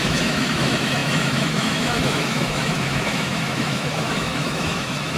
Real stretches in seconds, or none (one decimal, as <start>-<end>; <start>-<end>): none